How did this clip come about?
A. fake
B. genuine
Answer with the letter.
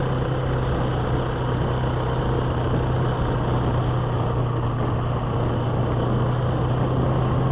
B